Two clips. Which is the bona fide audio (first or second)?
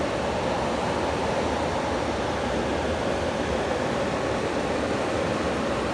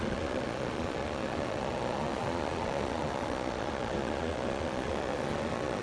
first